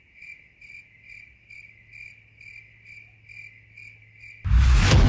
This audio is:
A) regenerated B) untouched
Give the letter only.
B